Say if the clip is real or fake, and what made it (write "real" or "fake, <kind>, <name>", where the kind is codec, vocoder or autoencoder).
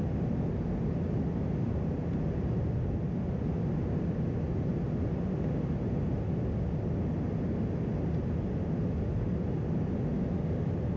real